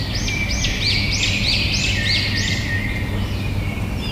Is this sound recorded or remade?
recorded